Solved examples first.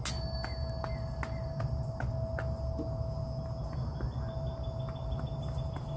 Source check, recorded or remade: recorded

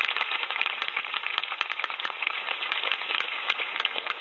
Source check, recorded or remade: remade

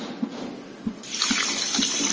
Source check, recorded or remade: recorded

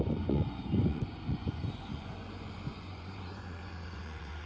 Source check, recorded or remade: remade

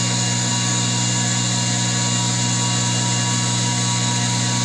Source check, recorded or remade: recorded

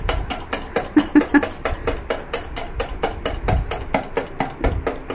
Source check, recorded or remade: recorded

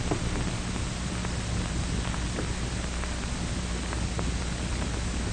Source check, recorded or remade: recorded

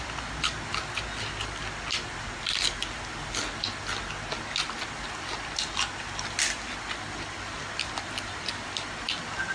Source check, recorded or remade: recorded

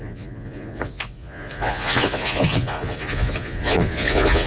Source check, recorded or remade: remade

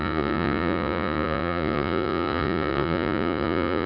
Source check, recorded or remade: remade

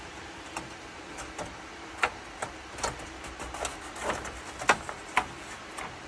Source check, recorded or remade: recorded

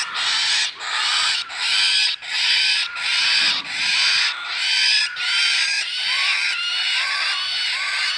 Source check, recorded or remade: recorded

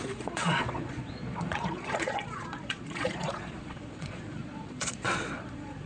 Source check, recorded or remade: remade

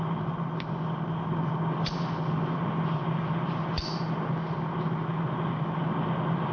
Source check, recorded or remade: recorded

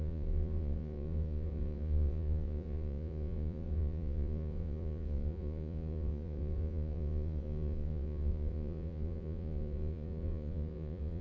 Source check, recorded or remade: remade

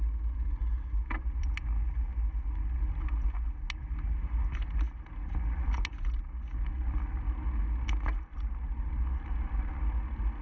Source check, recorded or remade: recorded